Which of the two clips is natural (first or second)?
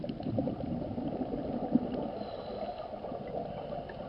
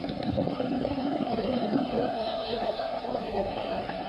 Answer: first